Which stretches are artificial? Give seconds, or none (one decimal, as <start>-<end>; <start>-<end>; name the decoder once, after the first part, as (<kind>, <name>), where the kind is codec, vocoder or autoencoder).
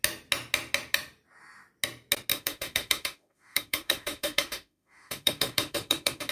2.3-6.3 (autoencoder, DAC-VAE)